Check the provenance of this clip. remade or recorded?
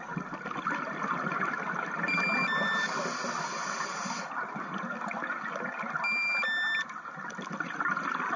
recorded